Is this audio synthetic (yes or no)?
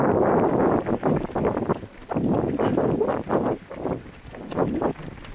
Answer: no